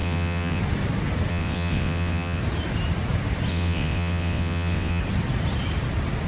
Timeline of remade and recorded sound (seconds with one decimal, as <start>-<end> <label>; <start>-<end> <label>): 0.0-0.6 remade; 0.6-1.3 recorded; 1.3-2.4 remade; 2.4-3.5 recorded; 3.5-5.0 remade; 5.0-6.3 recorded

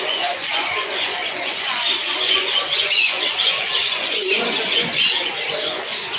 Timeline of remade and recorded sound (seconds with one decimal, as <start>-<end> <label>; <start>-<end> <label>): 0.0-6.2 remade